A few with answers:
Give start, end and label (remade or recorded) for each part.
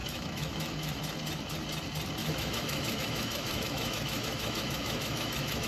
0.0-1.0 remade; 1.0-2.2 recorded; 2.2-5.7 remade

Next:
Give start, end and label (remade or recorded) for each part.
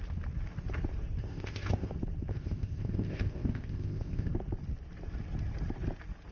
0.0-1.2 recorded; 1.2-1.9 remade; 1.9-2.3 recorded; 2.3-4.3 remade; 4.3-6.3 recorded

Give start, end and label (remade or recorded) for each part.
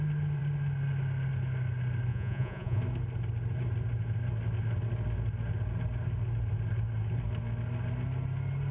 0.0-2.1 recorded; 2.1-2.8 remade; 2.8-8.7 recorded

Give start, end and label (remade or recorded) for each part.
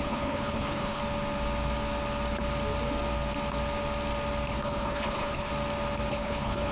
0.0-1.0 remade; 1.0-4.5 recorded; 4.5-5.5 remade; 5.5-6.1 recorded; 6.1-6.7 remade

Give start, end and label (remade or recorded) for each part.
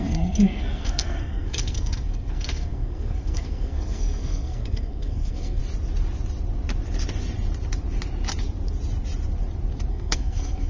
0.0-5.6 remade; 5.6-9.9 recorded; 9.9-10.7 remade